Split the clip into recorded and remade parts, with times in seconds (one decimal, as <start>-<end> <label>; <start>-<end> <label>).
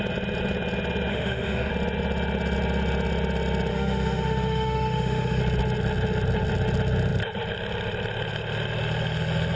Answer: 0.0-1.1 recorded; 1.1-1.7 remade; 1.7-3.7 recorded; 3.7-5.4 remade; 5.4-9.6 recorded